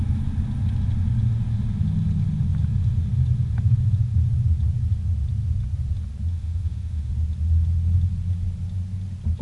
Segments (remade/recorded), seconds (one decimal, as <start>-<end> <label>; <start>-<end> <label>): 0.0-6.3 recorded; 6.3-7.1 remade; 7.1-9.4 recorded